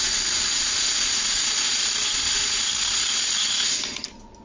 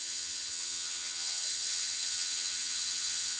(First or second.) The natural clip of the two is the first